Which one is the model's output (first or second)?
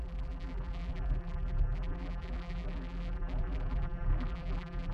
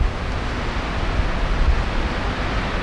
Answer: first